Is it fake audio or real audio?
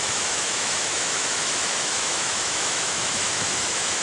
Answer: fake